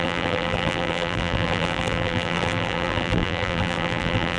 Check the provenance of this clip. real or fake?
fake